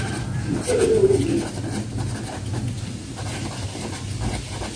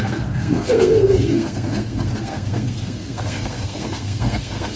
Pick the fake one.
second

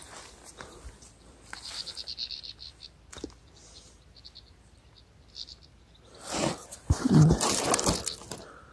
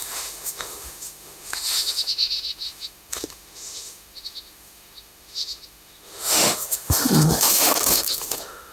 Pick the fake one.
second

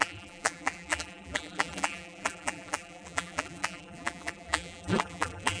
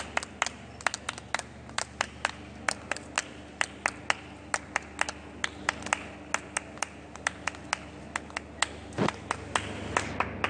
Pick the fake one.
first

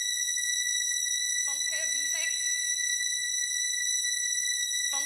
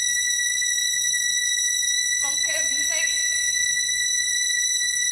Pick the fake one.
second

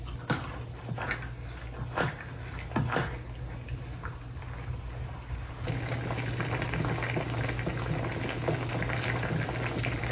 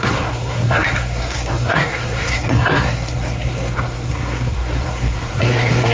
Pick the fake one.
second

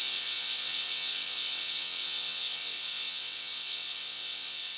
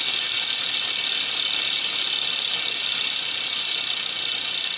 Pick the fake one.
first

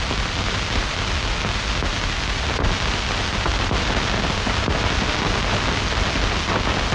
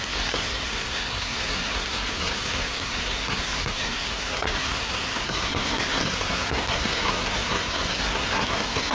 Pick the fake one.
second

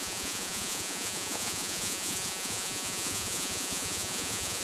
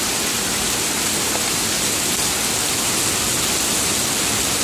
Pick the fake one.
first